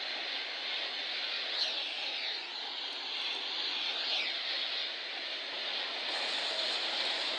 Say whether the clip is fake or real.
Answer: real